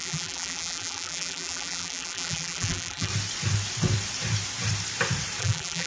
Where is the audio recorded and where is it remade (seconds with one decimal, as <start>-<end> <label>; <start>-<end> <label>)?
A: 0.0-3.1 remade; 3.1-5.4 recorded; 5.4-5.9 remade

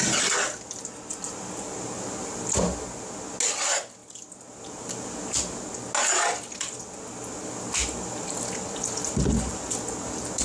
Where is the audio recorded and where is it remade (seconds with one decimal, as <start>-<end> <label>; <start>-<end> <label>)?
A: 0.0-10.4 recorded

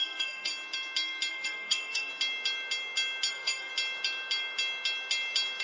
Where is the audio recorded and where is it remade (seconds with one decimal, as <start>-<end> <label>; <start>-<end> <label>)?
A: 0.0-0.5 remade; 0.5-1.3 recorded; 1.3-2.1 remade; 2.1-3.3 recorded; 3.3-3.7 remade; 3.7-5.6 recorded

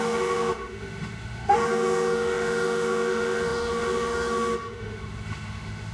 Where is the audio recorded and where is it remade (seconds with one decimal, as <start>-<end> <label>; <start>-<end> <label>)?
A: 0.0-5.9 remade

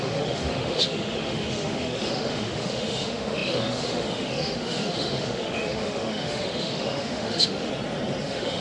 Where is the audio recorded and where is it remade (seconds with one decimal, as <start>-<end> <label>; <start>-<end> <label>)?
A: 0.0-7.7 remade; 7.7-8.2 recorded; 8.2-8.6 remade

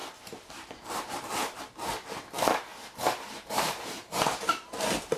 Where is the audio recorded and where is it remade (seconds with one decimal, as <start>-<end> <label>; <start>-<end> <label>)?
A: 0.0-0.5 recorded; 0.5-2.7 remade; 2.7-3.3 recorded; 3.3-5.2 remade

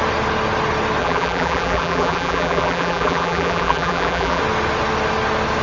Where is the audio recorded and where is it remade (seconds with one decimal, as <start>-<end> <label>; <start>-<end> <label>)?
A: 0.0-1.0 recorded; 1.0-4.4 remade; 4.4-5.6 recorded